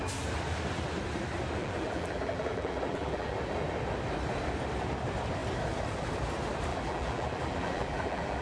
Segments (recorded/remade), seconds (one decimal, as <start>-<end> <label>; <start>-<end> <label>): 0.0-1.6 recorded; 1.6-3.4 remade; 3.4-6.7 recorded; 6.7-8.4 remade